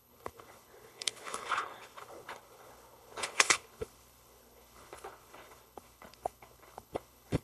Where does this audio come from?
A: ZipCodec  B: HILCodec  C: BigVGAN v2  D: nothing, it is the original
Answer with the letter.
B